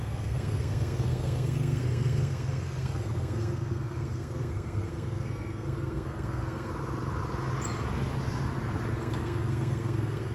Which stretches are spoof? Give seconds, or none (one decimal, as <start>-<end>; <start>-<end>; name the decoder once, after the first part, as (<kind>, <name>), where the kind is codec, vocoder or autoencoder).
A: 0.0-6.7 (codec, SNAC); 8.9-10.3